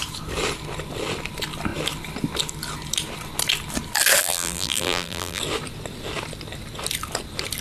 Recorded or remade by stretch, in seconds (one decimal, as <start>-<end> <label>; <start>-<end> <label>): 0.0-4.2 recorded; 4.2-5.4 remade; 5.4-7.6 recorded

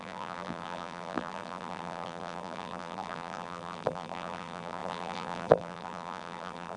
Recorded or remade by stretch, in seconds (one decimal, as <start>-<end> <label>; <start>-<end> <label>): 0.0-6.8 remade

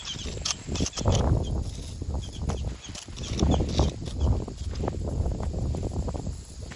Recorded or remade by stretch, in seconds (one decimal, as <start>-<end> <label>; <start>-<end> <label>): 0.0-4.6 recorded; 4.6-6.2 remade; 6.2-6.8 recorded

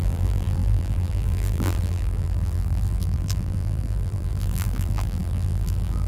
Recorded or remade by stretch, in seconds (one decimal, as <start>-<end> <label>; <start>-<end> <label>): 0.0-6.1 remade

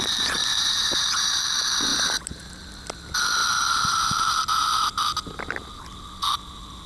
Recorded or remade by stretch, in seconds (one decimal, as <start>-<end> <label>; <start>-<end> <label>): 0.0-0.4 recorded; 0.4-1.4 remade; 1.4-1.9 recorded; 1.9-2.4 remade; 2.4-6.9 recorded